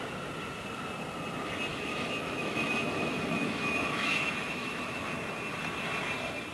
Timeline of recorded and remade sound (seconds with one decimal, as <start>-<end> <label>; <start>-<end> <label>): 0.0-1.7 recorded; 1.7-5.1 remade; 5.1-6.5 recorded